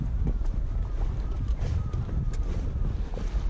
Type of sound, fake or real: real